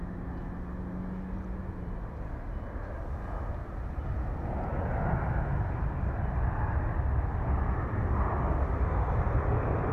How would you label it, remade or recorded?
recorded